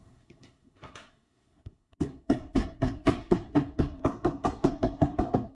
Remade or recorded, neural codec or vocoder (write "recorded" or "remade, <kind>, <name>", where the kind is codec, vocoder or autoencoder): remade, codec, SNAC